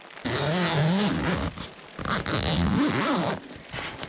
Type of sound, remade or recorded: recorded